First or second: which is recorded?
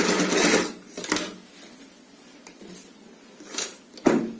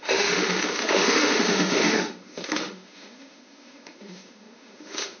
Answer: first